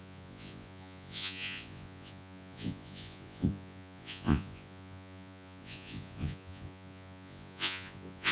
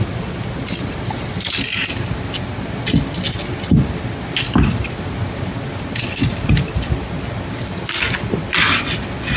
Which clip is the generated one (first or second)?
first